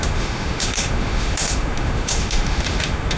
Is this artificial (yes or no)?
yes